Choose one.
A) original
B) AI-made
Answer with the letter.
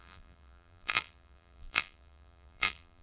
B